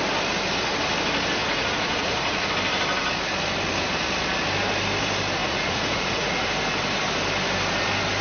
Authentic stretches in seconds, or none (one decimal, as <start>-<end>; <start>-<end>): 0.0-1.4; 2.5-5.4; 6.5-8.2